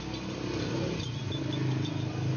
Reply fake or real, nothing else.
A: real